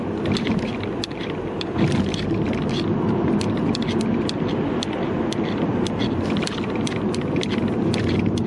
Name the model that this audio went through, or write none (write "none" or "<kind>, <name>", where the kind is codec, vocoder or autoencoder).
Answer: none